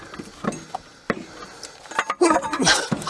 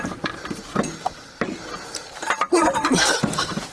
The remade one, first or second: second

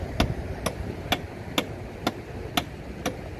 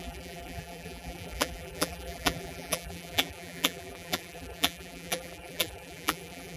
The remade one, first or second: second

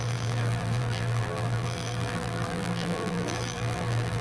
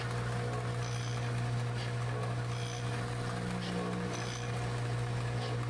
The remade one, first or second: first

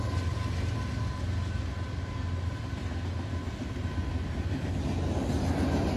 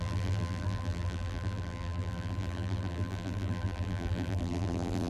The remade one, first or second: second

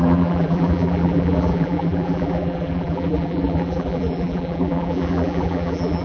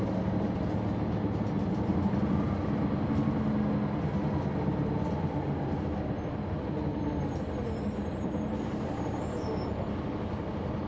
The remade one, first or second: first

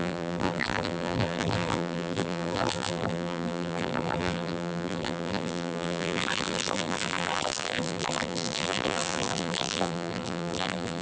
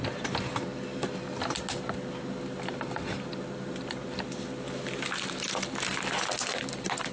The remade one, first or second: first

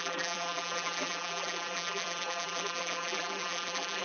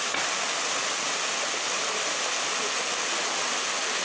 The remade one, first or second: first